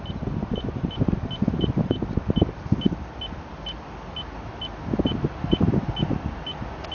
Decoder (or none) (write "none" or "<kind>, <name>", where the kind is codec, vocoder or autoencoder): none